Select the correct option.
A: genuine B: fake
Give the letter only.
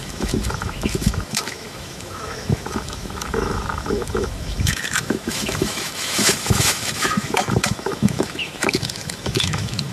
B